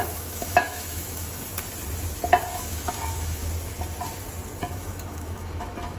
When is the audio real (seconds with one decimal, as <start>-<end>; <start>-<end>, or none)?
1.5-2.5; 3.4-4.6